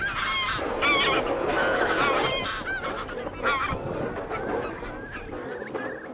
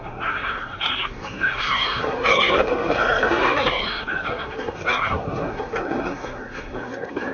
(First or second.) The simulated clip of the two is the second